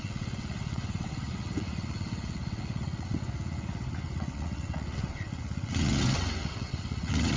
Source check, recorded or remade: remade